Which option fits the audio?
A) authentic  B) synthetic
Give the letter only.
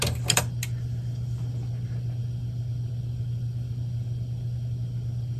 A